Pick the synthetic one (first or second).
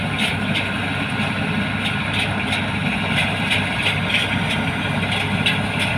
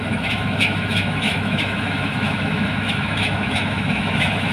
second